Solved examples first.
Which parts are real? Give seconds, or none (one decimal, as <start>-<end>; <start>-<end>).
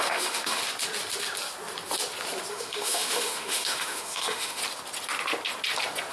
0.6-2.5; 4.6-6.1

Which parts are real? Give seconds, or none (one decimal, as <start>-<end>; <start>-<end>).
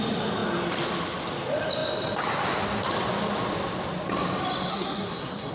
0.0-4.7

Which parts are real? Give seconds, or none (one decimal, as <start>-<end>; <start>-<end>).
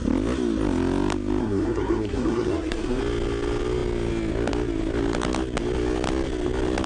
0.0-1.4; 3.0-6.9